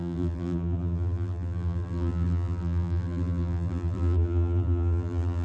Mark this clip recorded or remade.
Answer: remade